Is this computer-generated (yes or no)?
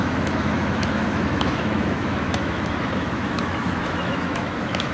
yes